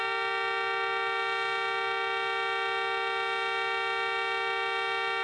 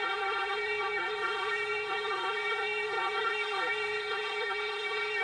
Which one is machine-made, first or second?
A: second